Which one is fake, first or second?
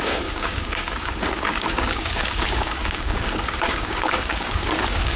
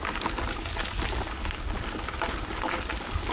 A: first